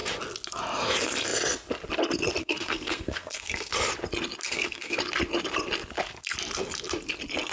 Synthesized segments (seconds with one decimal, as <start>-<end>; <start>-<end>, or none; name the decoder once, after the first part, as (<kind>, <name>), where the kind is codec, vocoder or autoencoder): 2.4-3.7 (codec, SNAC); 4.4-5.0